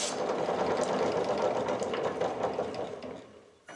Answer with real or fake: real